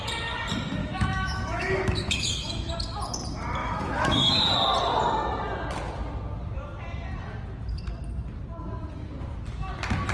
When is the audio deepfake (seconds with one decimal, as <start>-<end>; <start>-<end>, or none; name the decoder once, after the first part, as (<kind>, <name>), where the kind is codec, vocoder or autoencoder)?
0.8-2.7 (autoencoder, DAC-VAE); 3.6-4.5